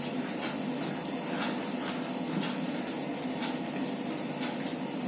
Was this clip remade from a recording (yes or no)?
no